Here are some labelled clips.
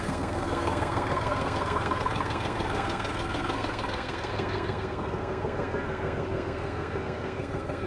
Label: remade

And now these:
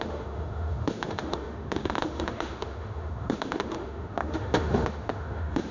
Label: remade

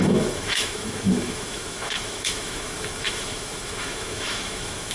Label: remade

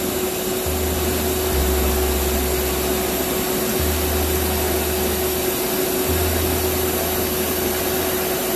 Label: recorded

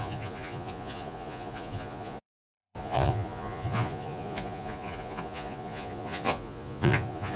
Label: remade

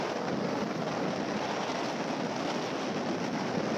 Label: remade